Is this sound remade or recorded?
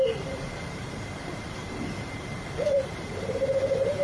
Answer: remade